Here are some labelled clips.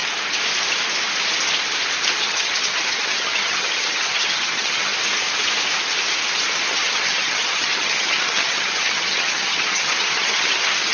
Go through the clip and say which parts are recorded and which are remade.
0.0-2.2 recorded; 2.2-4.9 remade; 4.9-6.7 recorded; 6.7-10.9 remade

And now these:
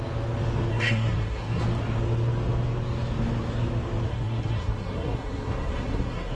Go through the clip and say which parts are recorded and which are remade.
0.0-0.7 recorded; 0.7-1.6 remade; 1.6-4.1 recorded; 4.1-6.3 remade

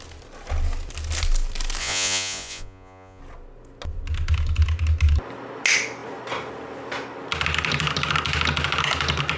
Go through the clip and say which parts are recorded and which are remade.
0.0-1.8 recorded; 1.8-3.2 remade; 3.2-9.4 recorded

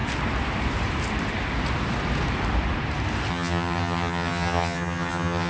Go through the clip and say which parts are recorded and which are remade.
0.0-3.3 recorded; 3.3-5.5 remade